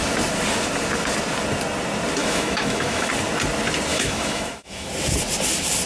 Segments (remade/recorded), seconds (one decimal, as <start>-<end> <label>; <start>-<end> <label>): 0.0-2.2 recorded; 2.2-3.1 remade; 3.1-3.9 recorded; 3.9-4.9 remade; 4.9-5.9 recorded